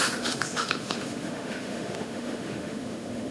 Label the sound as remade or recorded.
remade